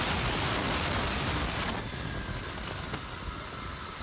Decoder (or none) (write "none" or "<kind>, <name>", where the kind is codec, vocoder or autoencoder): none